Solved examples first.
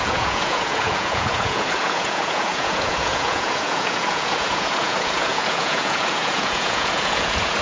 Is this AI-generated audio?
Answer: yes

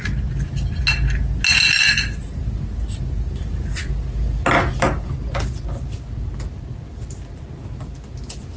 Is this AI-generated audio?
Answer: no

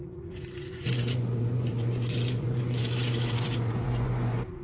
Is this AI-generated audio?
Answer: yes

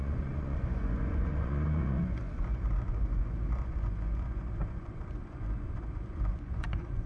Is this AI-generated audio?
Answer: yes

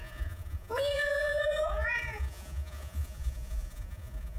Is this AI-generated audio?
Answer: yes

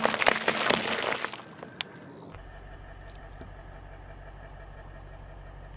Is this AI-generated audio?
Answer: no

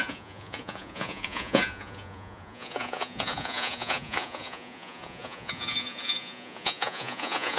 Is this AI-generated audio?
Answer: yes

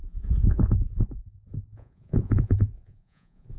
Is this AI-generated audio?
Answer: yes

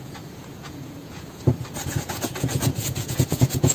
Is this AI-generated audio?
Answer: yes